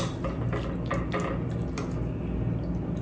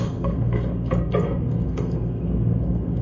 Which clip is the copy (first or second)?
second